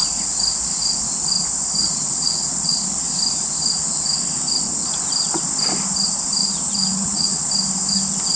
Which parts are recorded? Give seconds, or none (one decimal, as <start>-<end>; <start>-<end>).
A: 0.0-1.8; 2.9-6.4; 7.5-8.4